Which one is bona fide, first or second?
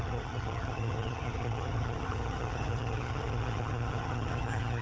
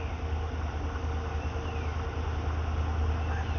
second